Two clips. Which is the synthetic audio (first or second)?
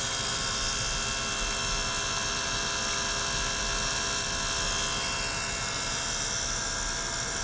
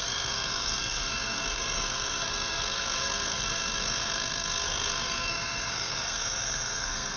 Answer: second